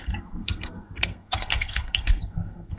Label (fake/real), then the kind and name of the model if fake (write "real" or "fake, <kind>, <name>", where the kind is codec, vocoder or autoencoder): fake, codec, SNAC